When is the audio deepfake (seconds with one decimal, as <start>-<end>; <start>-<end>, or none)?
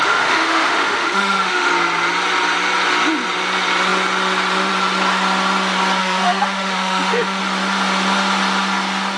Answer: 0.0-1.7; 6.0-7.4